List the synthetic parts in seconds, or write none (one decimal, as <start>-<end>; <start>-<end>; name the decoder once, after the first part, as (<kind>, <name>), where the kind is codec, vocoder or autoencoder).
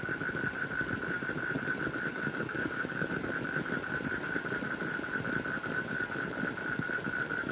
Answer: 2.1-3.1 (codec, DAC)